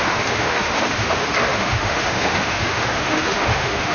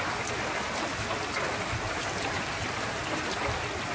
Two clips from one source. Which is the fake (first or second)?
first